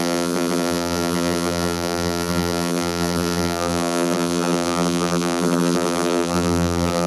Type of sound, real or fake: fake